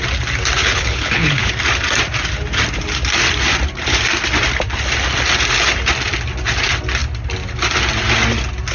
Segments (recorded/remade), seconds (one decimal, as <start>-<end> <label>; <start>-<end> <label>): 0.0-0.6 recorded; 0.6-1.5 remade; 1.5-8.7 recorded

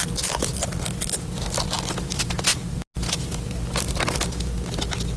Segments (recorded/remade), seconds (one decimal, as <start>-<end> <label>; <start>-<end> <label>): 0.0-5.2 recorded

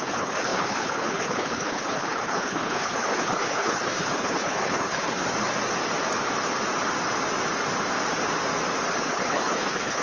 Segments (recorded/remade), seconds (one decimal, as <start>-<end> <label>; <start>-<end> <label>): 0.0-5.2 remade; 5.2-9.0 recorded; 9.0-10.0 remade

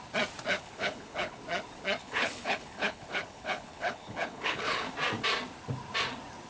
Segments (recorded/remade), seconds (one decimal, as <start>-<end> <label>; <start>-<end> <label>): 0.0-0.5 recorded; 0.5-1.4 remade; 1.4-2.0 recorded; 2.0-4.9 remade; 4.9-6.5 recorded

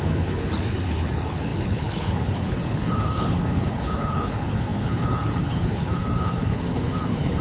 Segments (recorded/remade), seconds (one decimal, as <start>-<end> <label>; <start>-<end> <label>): 0.0-7.4 remade

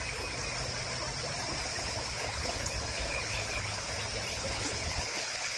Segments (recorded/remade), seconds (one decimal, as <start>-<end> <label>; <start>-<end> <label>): 0.0-1.7 recorded; 1.7-3.9 remade; 3.9-4.3 recorded; 4.3-5.6 remade

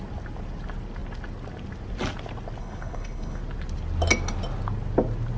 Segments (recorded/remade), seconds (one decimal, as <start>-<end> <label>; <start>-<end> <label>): 0.0-2.6 recorded; 2.6-3.4 remade; 3.4-5.4 recorded

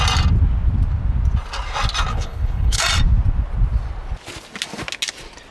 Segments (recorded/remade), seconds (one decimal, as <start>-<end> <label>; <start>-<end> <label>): 0.0-2.1 recorded; 2.1-2.8 remade; 2.8-5.5 recorded